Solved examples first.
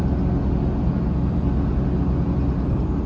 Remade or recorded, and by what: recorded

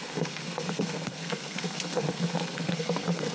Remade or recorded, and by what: remade, codec, SNAC